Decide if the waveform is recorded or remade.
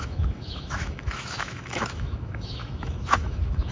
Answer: remade